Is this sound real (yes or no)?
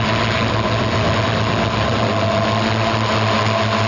yes